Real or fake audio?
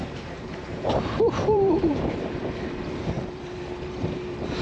fake